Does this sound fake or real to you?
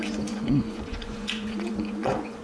fake